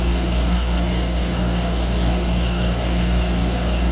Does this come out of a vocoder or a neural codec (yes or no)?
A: yes